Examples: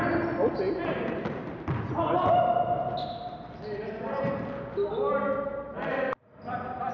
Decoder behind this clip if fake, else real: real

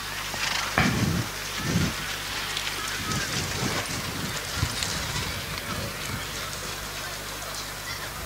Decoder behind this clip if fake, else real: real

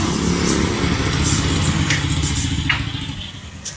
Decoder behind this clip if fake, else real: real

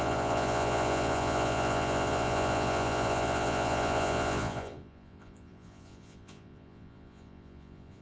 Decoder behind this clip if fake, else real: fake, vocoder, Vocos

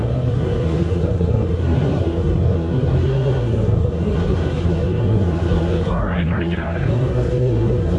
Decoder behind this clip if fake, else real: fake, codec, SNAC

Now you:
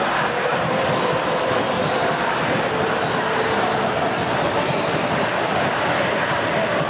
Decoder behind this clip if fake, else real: real